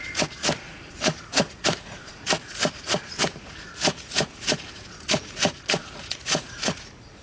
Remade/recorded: remade